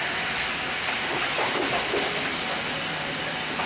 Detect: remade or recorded recorded